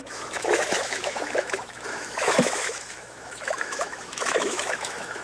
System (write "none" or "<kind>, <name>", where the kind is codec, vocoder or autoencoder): autoencoder, DAC-VAE